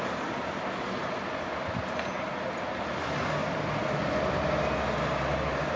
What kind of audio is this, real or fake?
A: real